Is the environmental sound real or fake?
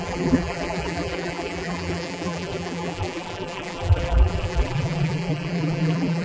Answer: fake